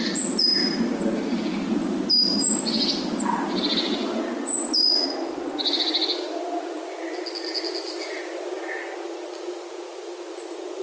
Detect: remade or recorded recorded